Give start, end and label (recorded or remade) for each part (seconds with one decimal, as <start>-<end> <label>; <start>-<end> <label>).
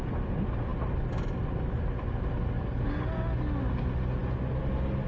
0.0-5.1 recorded